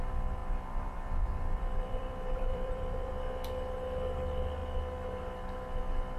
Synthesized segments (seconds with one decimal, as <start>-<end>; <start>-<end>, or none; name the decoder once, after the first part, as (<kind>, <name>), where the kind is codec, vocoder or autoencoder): 0.4-3.1 (vocoder, BigVGAN v2)